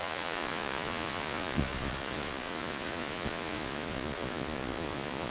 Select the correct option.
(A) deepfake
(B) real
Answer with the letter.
A